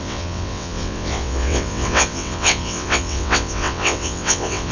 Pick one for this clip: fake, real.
fake